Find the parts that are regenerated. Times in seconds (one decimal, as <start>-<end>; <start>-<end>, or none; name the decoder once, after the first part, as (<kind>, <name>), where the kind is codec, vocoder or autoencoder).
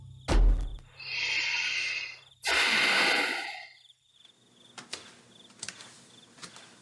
0.7-4.3 (vocoder, BigVGAN v2)